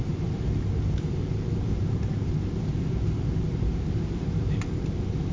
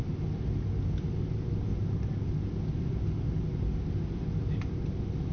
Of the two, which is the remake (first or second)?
first